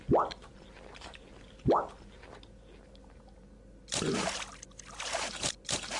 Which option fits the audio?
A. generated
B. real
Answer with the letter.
B